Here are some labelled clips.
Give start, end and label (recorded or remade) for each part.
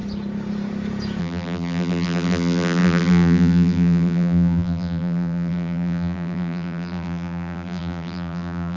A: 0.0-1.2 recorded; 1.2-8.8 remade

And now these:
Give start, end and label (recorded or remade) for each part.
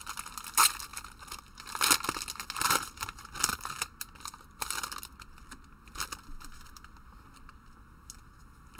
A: 0.0-8.8 recorded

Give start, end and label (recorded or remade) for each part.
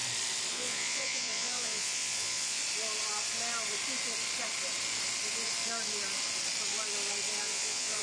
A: 0.0-0.5 recorded; 0.5-2.6 remade; 2.6-7.4 recorded; 7.4-8.0 remade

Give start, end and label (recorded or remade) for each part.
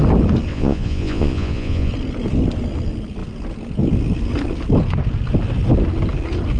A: 0.0-0.5 recorded; 0.5-1.9 remade; 1.9-6.6 recorded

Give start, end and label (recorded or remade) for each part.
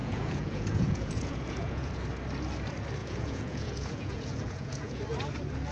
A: 0.0-1.9 remade; 1.9-3.0 recorded; 3.0-5.0 remade; 5.0-5.7 recorded